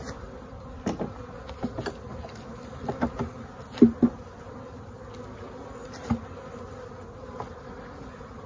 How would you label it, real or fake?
real